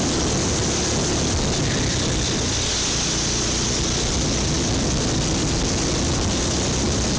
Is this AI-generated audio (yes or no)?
no